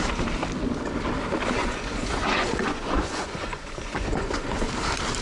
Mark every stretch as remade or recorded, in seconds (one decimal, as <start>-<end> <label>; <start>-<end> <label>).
0.0-1.6 recorded; 1.6-4.7 remade; 4.7-5.2 recorded